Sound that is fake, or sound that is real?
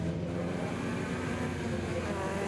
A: real